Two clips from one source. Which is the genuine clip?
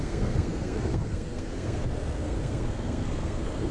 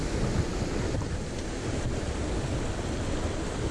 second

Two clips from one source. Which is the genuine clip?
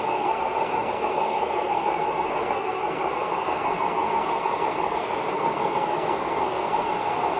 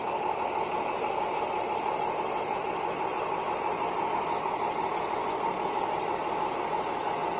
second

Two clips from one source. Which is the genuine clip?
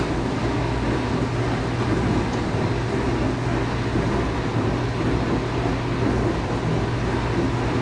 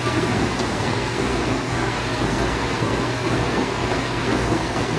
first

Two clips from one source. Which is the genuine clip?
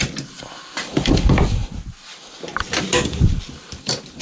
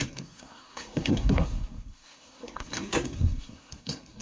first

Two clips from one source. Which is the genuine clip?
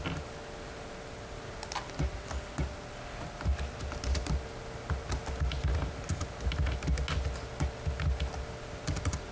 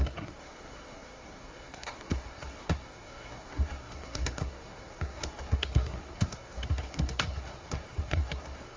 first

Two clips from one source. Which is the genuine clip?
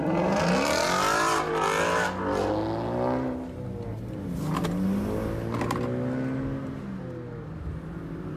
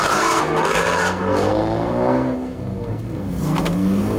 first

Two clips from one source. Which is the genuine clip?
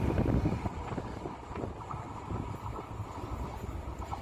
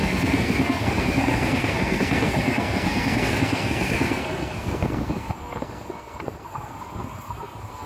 first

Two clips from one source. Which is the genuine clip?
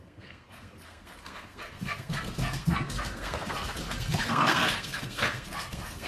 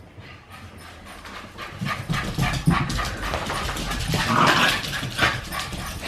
second